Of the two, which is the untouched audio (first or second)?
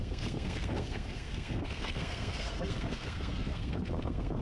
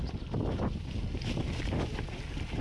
second